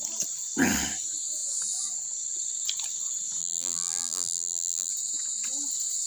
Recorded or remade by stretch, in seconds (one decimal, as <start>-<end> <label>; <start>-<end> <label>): 0.0-3.4 recorded; 3.4-4.9 remade; 4.9-6.1 recorded